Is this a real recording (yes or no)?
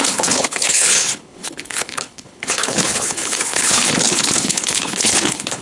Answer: no